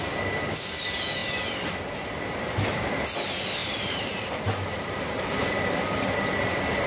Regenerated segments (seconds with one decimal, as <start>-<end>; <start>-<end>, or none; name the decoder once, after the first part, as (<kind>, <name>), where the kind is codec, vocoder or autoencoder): 3.6-5.6 (vocoder, BigVGAN v2)